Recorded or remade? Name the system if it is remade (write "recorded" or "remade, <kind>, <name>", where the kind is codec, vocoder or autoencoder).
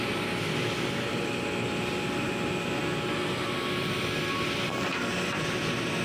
recorded